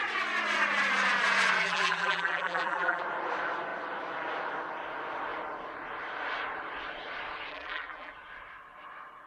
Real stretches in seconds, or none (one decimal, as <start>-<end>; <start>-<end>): 0.0-1.6; 3.0-7.5; 8.1-9.3